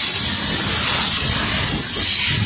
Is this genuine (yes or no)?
yes